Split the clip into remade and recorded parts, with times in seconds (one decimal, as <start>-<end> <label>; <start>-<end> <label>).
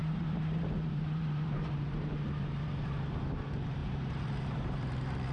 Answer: 0.0-3.2 remade; 3.2-3.8 recorded; 3.8-5.3 remade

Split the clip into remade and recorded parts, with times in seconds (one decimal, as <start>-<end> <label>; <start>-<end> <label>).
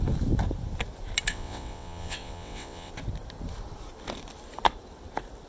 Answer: 0.0-1.3 recorded; 1.3-2.9 remade; 2.9-5.5 recorded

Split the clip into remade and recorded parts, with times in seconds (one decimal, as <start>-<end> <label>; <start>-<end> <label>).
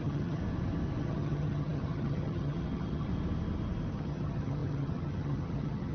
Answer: 0.0-0.4 remade; 0.4-1.0 recorded; 1.0-3.1 remade; 3.1-3.9 recorded; 3.9-5.9 remade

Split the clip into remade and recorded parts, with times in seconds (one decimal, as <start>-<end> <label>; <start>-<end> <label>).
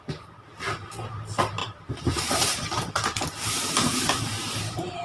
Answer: 0.0-5.0 remade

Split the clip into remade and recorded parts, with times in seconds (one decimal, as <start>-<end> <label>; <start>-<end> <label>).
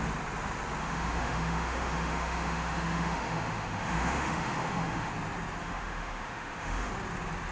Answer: 0.0-0.8 recorded; 0.8-5.1 remade; 5.1-5.6 recorded; 5.6-6.9 remade; 6.9-7.5 recorded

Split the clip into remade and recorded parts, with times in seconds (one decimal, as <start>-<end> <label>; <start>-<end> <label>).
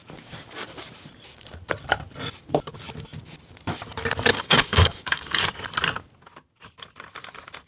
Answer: 0.0-4.3 recorded; 4.3-5.4 remade; 5.4-7.7 recorded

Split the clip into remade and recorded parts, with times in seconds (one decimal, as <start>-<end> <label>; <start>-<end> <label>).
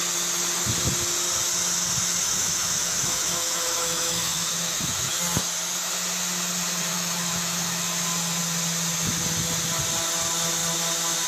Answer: 0.0-2.2 recorded; 2.2-5.2 remade; 5.2-6.9 recorded; 6.9-7.8 remade; 7.8-11.3 recorded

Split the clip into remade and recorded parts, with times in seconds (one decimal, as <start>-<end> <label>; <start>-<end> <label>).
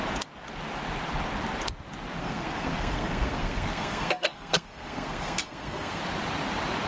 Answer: 0.0-2.2 recorded; 2.2-6.0 remade; 6.0-6.9 recorded